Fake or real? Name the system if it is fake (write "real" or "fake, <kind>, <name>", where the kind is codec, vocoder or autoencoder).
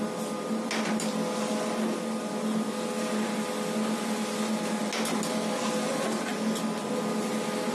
real